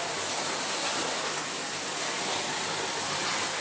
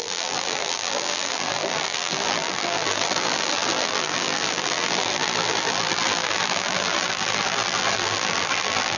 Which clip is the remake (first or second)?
second